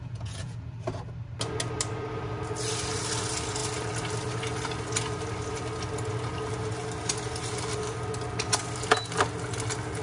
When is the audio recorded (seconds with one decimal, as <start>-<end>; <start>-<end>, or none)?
0.7-10.0